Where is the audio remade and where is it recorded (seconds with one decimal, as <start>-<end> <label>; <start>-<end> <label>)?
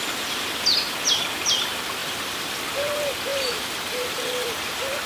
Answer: 0.0-2.0 recorded; 2.0-2.6 remade; 2.6-3.3 recorded; 3.3-5.1 remade